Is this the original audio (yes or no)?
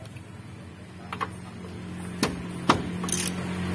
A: yes